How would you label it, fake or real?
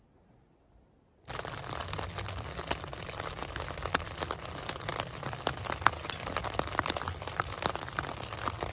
real